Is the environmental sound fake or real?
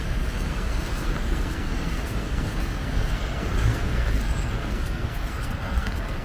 fake